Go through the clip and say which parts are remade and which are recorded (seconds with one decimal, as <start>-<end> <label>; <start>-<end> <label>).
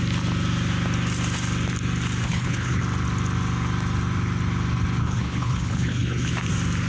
0.0-2.2 recorded; 2.2-2.8 remade; 2.8-5.0 recorded; 5.0-6.3 remade; 6.3-6.9 recorded